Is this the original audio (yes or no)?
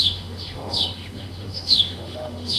no